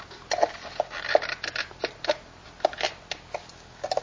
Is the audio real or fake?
real